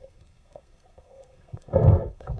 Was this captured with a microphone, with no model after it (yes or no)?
no